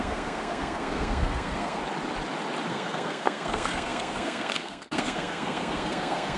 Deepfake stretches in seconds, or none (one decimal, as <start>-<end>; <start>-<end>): 0.0-1.8; 2.7-6.4